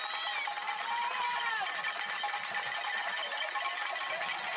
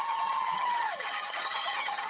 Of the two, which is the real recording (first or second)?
first